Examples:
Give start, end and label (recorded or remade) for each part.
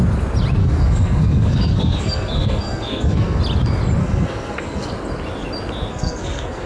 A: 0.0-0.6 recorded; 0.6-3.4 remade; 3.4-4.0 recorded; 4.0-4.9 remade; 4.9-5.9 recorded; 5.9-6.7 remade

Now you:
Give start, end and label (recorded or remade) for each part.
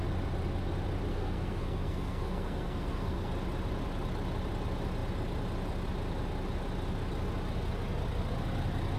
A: 0.0-1.1 recorded; 1.1-3.3 remade; 3.3-9.0 recorded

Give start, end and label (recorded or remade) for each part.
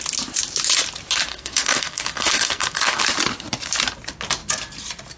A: 0.0-1.3 recorded; 1.3-3.0 remade; 3.0-5.2 recorded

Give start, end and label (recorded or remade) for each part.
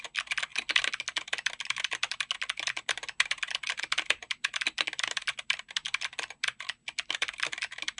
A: 0.0-8.0 recorded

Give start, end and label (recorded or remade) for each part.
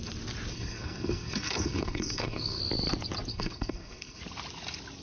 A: 0.0-0.5 recorded; 0.5-2.6 remade; 2.6-3.3 recorded; 3.3-4.2 remade; 4.2-5.0 recorded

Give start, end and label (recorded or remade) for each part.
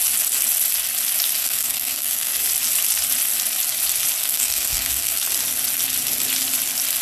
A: 0.0-1.4 recorded; 1.4-2.3 remade; 2.3-4.2 recorded; 4.2-5.2 remade; 5.2-7.0 recorded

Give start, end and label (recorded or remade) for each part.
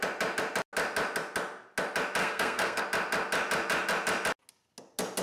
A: 0.0-2.2 recorded; 2.2-2.8 remade; 2.8-5.2 recorded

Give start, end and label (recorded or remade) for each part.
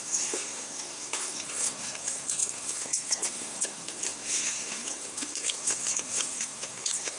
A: 0.0-7.2 remade